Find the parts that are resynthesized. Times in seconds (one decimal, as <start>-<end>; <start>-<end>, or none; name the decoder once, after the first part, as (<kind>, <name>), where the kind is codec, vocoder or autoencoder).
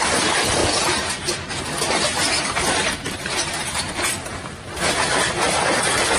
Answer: 2.1-5.8 (vocoder, BigVGAN v2)